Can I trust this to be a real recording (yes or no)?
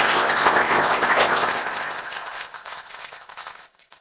no